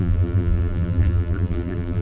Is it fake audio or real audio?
fake